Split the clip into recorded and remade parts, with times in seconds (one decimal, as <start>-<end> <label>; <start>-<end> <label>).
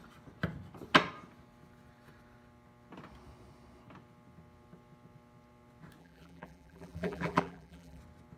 0.0-6.0 recorded; 6.0-8.0 remade; 8.0-8.4 recorded